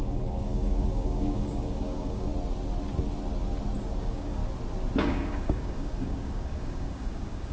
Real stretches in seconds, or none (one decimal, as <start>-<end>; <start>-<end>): 2.3-3.9; 4.4-5.0